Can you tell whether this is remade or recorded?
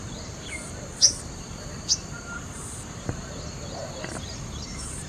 remade